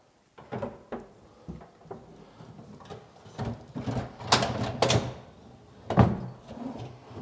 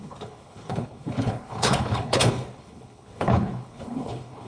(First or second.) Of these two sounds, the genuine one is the first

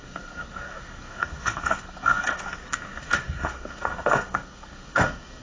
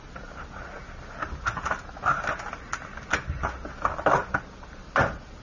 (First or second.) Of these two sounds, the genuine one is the second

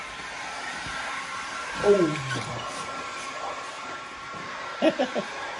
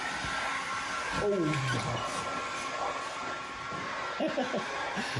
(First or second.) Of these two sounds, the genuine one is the second